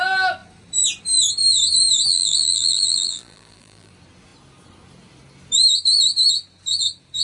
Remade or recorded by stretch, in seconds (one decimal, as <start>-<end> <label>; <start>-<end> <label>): 0.0-2.1 recorded; 2.1-3.9 remade; 3.9-7.2 recorded